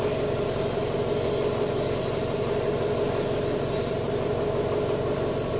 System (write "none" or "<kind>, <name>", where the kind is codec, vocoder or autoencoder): none